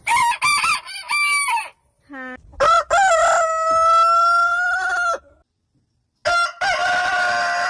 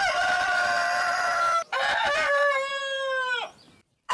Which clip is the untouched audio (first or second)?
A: first